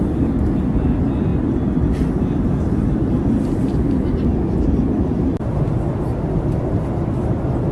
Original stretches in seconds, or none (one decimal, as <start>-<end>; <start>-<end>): 0.0-7.7